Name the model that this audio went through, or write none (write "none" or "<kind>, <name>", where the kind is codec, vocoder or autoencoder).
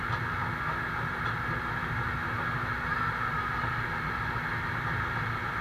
none